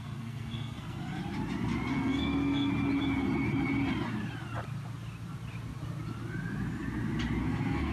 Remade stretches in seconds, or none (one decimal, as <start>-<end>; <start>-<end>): 0.0-1.2; 1.9-2.7; 7.4-7.9